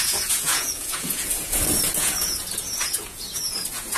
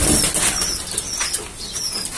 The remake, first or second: first